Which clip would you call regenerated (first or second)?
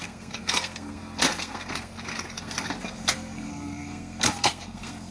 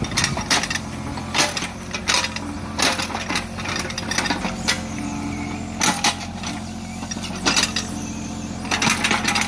first